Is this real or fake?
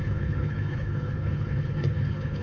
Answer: fake